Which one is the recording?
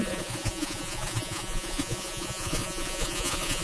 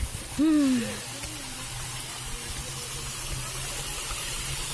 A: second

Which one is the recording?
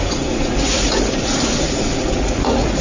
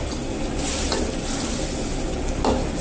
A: second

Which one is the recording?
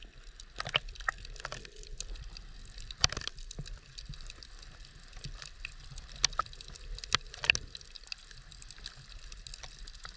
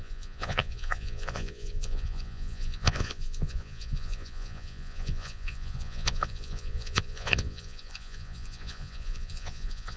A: first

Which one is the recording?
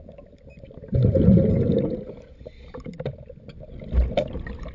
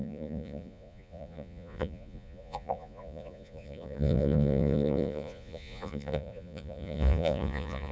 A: first